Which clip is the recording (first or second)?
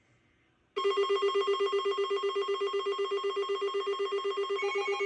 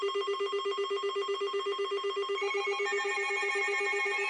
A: first